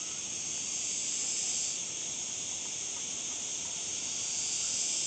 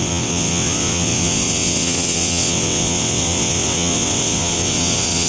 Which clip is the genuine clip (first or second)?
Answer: first